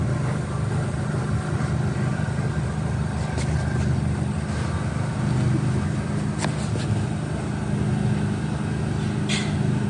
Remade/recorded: recorded